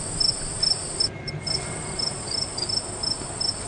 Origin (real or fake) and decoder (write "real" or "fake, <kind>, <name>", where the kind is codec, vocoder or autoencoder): real